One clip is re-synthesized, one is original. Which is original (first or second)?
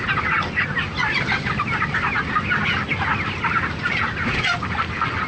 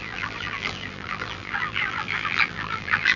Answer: first